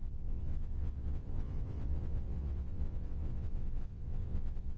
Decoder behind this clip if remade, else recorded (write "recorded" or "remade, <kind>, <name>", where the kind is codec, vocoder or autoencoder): remade, vocoder, WaveNeXt